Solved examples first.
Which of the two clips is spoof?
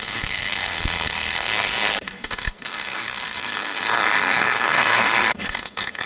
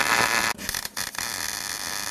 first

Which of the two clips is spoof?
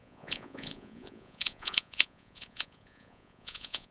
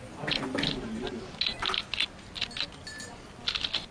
first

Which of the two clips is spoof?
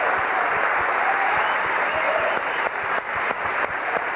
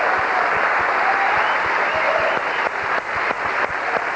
first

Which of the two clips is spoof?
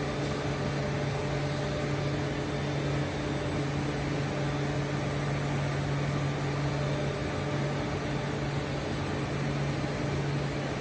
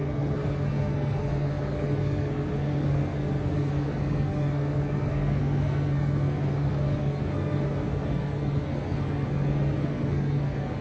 second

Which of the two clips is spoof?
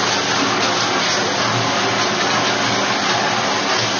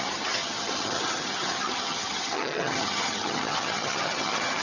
second